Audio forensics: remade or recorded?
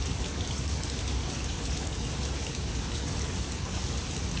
remade